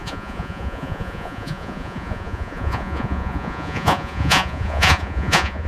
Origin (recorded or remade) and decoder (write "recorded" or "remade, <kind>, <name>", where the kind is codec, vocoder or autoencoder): remade, vocoder, Vocos